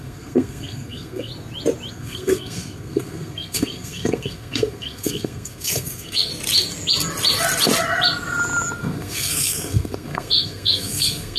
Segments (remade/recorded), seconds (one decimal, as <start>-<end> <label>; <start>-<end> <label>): 0.0-1.3 remade; 1.3-1.9 recorded; 1.9-6.3 remade; 6.3-8.8 recorded; 8.8-11.4 remade